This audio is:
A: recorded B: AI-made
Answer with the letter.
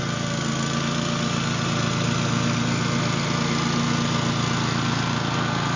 A